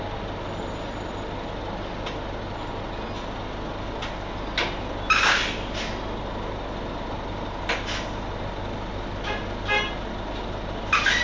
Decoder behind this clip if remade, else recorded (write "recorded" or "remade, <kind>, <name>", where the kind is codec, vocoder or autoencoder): recorded